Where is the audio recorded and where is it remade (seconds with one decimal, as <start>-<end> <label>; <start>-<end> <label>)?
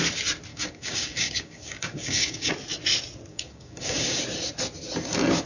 0.0-0.5 recorded; 0.5-2.5 remade; 2.5-3.3 recorded; 3.3-4.2 remade; 4.2-5.5 recorded